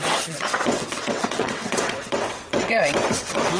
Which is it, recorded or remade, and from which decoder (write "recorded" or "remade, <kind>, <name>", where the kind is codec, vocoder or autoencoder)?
remade, vocoder, WaveNeXt